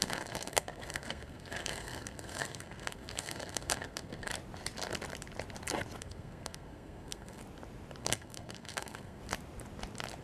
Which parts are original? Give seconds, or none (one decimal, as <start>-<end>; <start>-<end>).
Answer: 4.3-6.0; 7.4-8.0; 9.2-10.2